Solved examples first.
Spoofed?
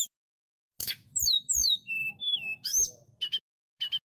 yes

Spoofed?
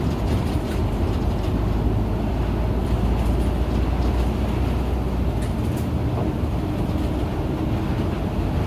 no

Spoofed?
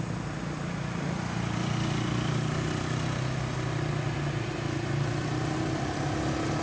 no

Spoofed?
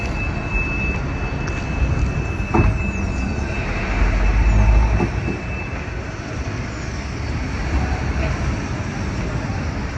no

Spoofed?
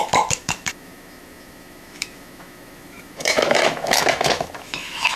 yes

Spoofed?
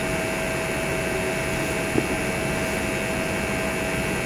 no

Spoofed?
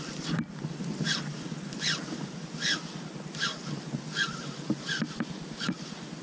no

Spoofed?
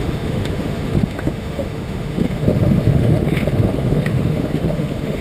yes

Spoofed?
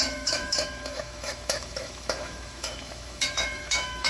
yes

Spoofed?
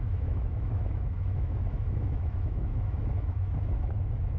yes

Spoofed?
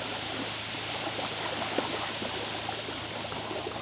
no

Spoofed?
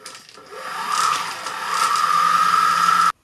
no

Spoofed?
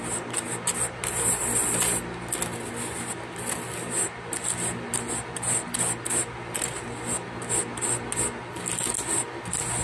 no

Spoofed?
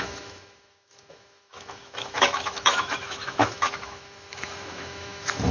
yes